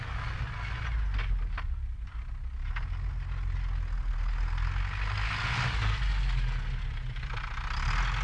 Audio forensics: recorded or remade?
recorded